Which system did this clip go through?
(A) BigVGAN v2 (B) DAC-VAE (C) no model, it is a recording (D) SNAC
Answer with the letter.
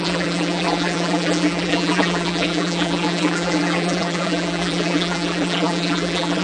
A